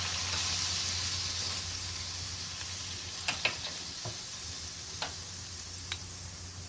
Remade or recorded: recorded